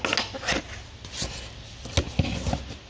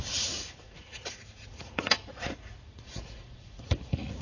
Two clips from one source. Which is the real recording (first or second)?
first